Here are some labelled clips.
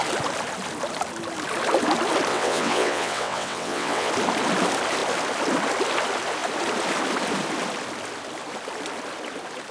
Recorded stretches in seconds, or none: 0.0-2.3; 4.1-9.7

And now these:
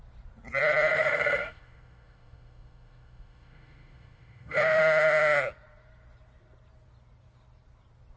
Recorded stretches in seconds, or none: 0.0-0.9; 4.8-8.2

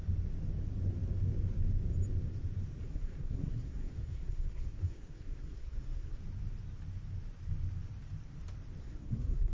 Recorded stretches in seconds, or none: 0.0-2.8; 6.2-8.8

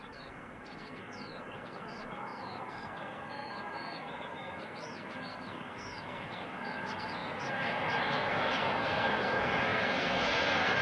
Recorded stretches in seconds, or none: none